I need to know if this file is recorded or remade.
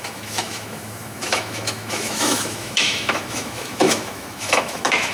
remade